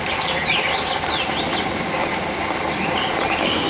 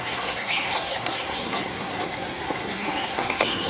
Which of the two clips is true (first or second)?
first